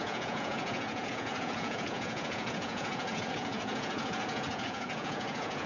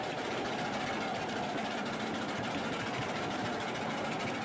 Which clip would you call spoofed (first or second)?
first